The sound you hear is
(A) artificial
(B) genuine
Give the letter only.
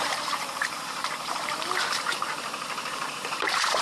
A